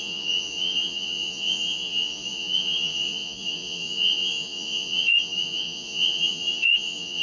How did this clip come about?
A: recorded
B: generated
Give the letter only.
B